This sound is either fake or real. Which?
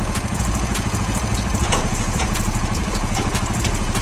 fake